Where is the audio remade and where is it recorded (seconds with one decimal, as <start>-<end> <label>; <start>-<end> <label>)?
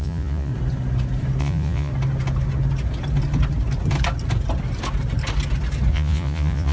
0.0-0.5 remade; 0.5-1.4 recorded; 1.4-1.9 remade; 1.9-5.9 recorded; 5.9-6.7 remade